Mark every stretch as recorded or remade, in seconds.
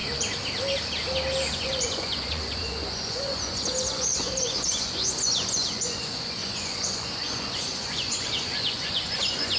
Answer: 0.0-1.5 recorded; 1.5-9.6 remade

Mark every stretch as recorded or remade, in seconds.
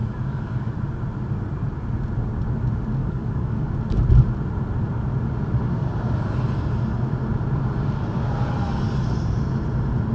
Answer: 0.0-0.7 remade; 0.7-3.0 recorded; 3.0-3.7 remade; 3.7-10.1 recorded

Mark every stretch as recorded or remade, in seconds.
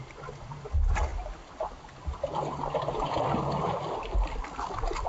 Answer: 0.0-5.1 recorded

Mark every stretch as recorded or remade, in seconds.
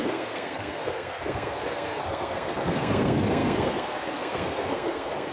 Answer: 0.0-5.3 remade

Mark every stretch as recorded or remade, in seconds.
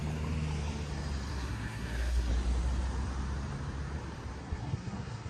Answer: 0.0-1.3 recorded; 1.3-2.3 remade; 2.3-4.4 recorded; 4.4-5.3 remade